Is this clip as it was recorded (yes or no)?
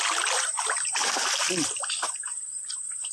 no